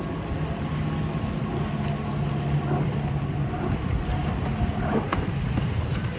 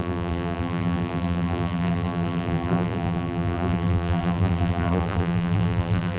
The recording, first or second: first